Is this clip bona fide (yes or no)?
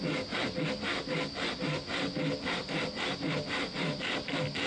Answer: yes